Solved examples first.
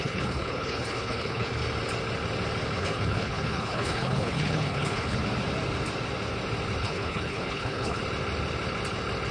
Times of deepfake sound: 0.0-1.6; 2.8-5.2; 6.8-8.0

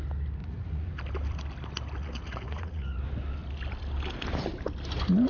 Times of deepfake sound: 0.4-0.9; 2.0-3.0

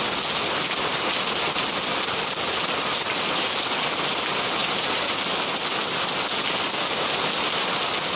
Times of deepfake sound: 4.6-5.1

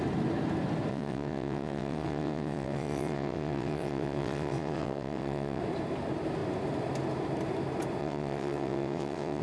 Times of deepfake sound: 0.9-5.6; 8.0-9.4

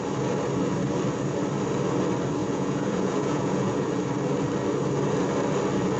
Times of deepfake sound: 2.4-3.9

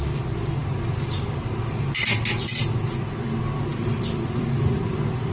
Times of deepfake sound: 0.0-0.6; 3.2-5.3

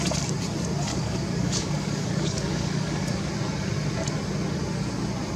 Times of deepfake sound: 0.9-3.3